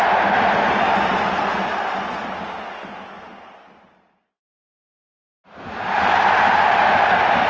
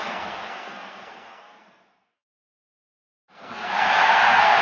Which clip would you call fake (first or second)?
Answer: second